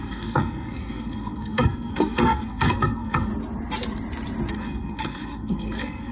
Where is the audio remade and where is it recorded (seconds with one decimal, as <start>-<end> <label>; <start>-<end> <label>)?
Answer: 0.0-3.3 remade; 3.3-4.5 recorded; 4.5-6.1 remade